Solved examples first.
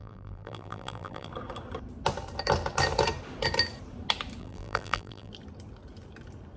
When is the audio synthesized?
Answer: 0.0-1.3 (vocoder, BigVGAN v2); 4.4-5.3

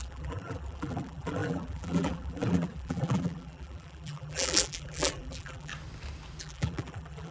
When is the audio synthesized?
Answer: 0.0-5.7 (vocoder, BigVGAN v2); 6.4-7.3

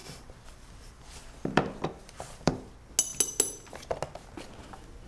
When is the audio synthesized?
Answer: 0.0-2.7 (vocoder, BigVGAN v2)

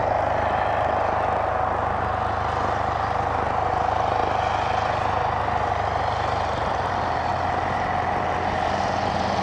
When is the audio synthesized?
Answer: 3.7-4.2 (vocoder, BigVGAN v2); 6.0-7.3; 8.5-9.4

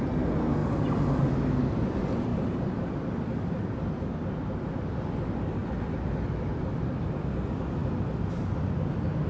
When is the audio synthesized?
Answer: 2.3-2.8 (vocoder, BigVGAN v2); 5.6-7.3